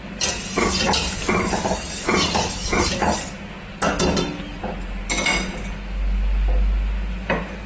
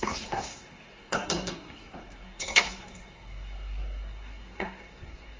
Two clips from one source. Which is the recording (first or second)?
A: first